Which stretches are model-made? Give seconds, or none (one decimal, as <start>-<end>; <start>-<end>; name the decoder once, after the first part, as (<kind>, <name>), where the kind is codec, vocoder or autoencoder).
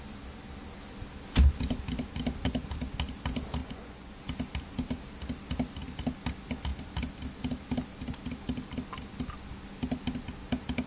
3.6-4.2 (vocoder, Vocos)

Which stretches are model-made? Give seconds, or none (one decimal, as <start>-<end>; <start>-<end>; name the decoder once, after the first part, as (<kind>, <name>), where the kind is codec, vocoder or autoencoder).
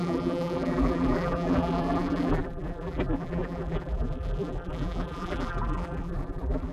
0.0-6.7 (vocoder, BigVGAN v2)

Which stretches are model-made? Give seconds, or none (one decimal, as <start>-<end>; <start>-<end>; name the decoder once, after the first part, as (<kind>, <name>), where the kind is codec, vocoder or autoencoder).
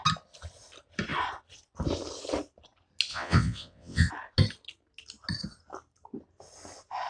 3.1-4.1 (vocoder, WaveNeXt)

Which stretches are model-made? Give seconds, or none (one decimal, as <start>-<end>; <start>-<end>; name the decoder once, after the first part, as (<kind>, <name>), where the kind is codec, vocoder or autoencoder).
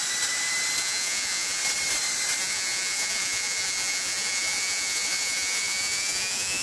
0.8-1.6 (vocoder, Vocos); 2.4-6.6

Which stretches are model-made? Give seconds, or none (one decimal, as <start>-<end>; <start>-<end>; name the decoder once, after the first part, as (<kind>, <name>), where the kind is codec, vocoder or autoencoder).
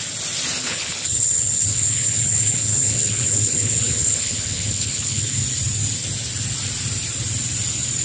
0.6-5.4 (codec, HILCodec)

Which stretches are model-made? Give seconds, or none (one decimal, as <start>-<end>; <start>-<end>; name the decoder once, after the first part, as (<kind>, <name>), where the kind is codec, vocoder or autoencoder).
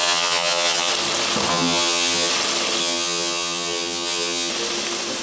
0.0-0.9 (vocoder, HiFi-GAN); 1.5-2.3; 2.8-4.5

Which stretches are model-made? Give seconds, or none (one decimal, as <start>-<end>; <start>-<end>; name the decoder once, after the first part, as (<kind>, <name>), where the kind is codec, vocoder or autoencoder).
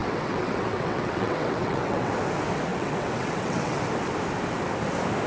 0.0-2.1 (vocoder, WaveNeXt); 2.7-3.8